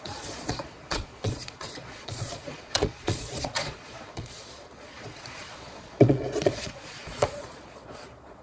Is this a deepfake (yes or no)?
yes